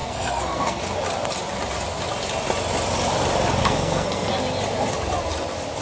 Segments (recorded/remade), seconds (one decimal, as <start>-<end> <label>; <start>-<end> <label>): 0.0-0.8 remade; 0.8-3.6 recorded; 3.6-4.3 remade; 4.3-5.8 recorded